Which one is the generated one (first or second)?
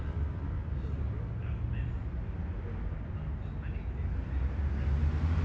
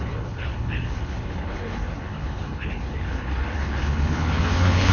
second